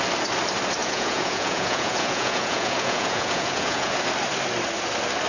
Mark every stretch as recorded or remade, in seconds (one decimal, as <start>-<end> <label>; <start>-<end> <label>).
0.0-0.8 recorded; 0.8-4.0 remade; 4.0-5.3 recorded